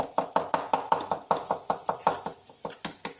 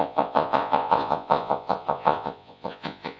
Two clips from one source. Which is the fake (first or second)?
second